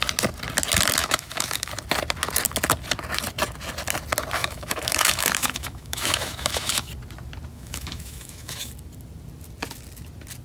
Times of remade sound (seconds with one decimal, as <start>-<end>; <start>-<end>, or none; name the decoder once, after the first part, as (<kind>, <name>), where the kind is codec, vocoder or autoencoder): 1.0-1.7 (autoencoder, DAC-VAE); 4.4-6.9; 7.5-8.7

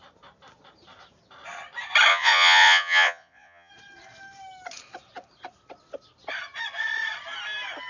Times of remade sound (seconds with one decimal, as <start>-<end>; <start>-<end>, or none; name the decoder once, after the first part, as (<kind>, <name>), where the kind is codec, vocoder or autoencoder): 2.1-3.7 (vocoder, Vocos)

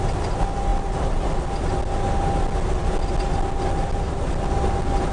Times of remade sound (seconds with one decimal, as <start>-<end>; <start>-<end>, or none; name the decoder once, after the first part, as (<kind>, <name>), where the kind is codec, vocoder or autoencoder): none

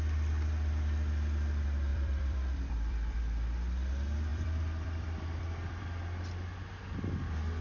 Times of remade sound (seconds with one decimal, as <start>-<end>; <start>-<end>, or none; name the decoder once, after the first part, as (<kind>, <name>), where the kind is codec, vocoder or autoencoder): 1.9-3.2 (vocoder, BigVGAN v2); 4.3-5.8